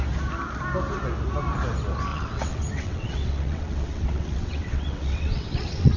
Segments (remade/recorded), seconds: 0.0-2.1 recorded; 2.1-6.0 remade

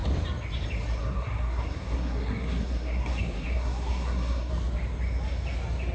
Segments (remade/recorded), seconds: 0.0-1.0 recorded; 1.0-4.5 remade; 4.5-5.9 recorded

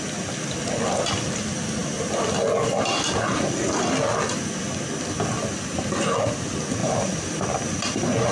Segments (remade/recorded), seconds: 0.0-6.8 recorded; 6.8-7.4 remade; 7.4-8.3 recorded

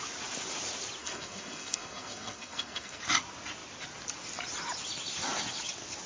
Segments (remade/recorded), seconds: 0.0-1.0 recorded; 1.0-3.0 remade; 3.0-6.1 recorded

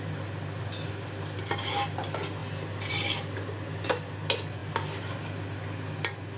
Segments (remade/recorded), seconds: 0.0-6.4 recorded

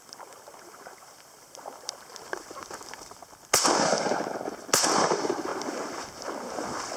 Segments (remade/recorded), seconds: 0.0-3.2 remade; 3.2-4.8 recorded; 4.8-5.5 remade; 5.5-7.0 recorded

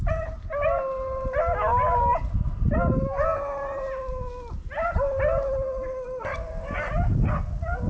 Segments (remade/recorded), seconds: 0.0-7.9 recorded